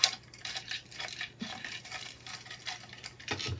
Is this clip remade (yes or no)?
no